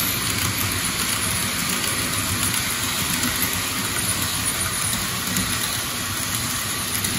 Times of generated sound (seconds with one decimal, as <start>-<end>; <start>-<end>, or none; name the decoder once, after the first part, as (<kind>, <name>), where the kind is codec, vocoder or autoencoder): none